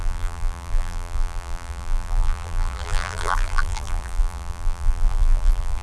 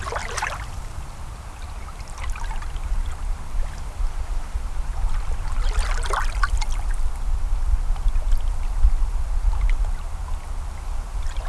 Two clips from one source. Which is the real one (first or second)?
second